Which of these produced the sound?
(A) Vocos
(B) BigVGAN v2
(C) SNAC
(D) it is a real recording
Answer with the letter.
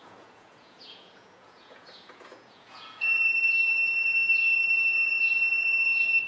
A